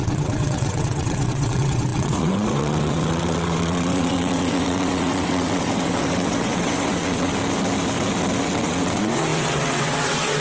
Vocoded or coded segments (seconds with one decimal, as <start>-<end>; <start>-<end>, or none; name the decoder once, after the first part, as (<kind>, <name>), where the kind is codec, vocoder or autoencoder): 0.0-7.3 (vocoder, WaveNeXt); 8.4-10.4